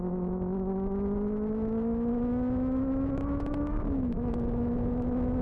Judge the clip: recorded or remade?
remade